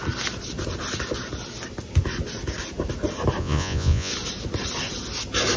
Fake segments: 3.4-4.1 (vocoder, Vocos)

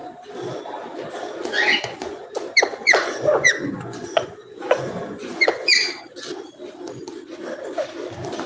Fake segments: 1.5-2.3 (vocoder, Vocos); 2.7-6.0

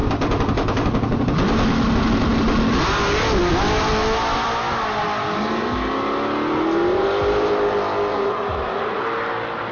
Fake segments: 8.1-9.0 (vocoder, Vocos)